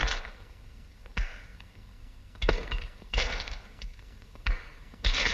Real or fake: fake